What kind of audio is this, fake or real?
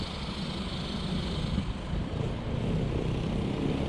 real